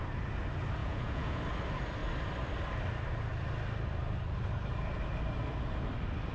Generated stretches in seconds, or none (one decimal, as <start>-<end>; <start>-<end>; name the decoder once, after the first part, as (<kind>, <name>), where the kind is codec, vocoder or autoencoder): 0.8-1.4 (vocoder, Vocos)